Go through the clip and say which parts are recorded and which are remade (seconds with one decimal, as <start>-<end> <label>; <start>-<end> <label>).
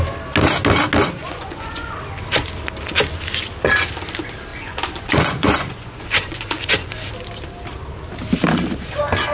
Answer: 0.0-1.2 recorded; 1.2-1.9 remade; 1.9-4.5 recorded; 4.5-7.1 remade; 7.1-9.3 recorded